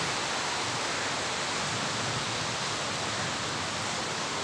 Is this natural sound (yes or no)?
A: yes